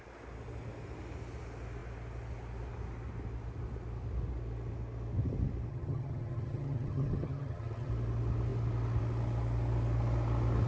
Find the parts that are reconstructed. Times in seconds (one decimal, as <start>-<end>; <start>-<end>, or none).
5.7-7.9